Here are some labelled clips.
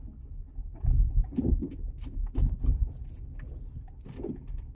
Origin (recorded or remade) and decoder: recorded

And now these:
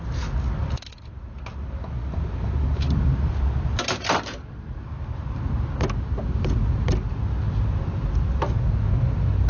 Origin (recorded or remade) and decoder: recorded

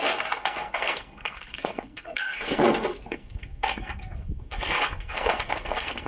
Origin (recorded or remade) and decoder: remade, codec, SNAC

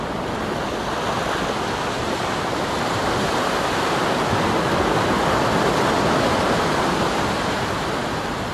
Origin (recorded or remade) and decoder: recorded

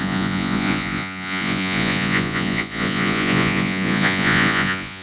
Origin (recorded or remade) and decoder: remade, vocoder, Vocos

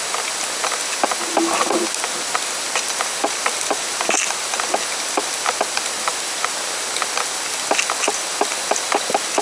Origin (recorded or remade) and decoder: recorded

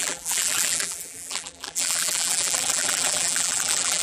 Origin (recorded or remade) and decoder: remade, vocoder, BigVGAN v2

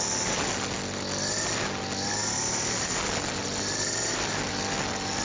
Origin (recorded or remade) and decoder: recorded